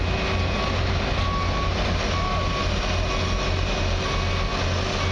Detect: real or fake real